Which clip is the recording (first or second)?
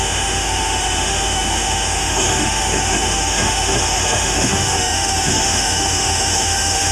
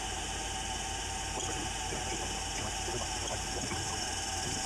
second